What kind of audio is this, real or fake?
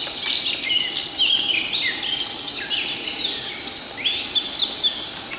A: real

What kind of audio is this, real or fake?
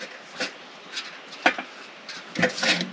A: real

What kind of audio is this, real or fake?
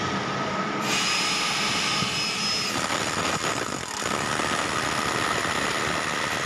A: real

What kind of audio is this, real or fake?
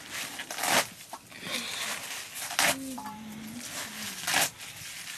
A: real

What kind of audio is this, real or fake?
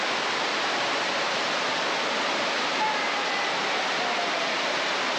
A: real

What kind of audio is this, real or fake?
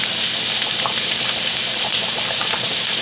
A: fake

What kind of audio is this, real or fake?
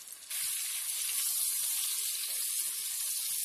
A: real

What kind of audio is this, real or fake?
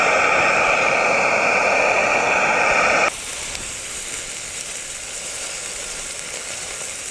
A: real